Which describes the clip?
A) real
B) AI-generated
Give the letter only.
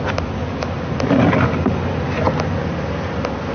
A